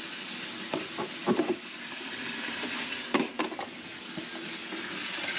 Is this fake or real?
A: real